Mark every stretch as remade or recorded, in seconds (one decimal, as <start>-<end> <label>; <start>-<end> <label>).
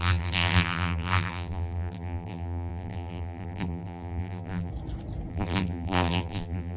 0.0-4.7 remade; 4.7-5.3 recorded; 5.3-6.8 remade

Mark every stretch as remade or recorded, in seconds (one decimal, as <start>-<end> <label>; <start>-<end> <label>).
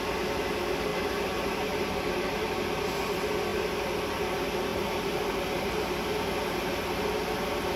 0.0-0.9 recorded; 0.9-2.6 remade; 2.6-4.7 recorded; 4.7-5.7 remade; 5.7-7.8 recorded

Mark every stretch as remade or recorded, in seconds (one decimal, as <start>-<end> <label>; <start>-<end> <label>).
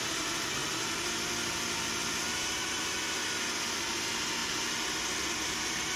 0.0-0.6 remade; 0.6-3.9 recorded; 3.9-4.4 remade; 4.4-5.3 recorded; 5.3-6.0 remade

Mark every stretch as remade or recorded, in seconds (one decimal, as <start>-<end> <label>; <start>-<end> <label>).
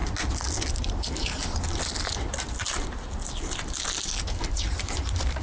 0.0-0.7 recorded; 0.7-1.4 remade; 1.4-4.3 recorded; 4.3-5.4 remade